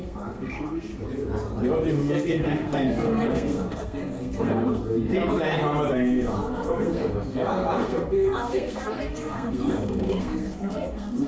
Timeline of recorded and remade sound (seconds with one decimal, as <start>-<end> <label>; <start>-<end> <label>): 0.0-0.9 remade; 0.9-1.9 recorded; 1.9-5.2 remade; 5.2-5.9 recorded; 5.9-11.3 remade